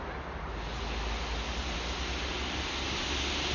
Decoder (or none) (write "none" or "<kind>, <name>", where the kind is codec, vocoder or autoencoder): none